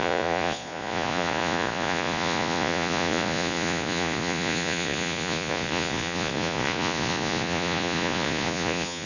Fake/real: fake